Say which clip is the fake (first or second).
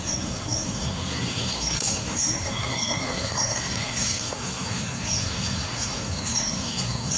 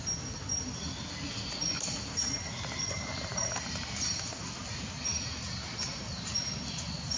first